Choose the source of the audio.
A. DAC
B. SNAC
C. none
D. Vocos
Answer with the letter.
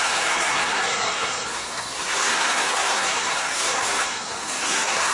B